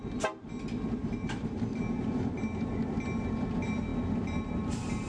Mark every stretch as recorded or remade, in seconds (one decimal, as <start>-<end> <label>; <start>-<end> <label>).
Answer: 0.0-1.0 recorded; 1.0-1.8 remade; 1.8-5.1 recorded